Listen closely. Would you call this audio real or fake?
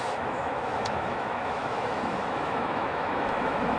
fake